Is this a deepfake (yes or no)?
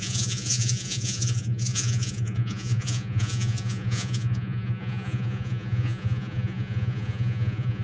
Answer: yes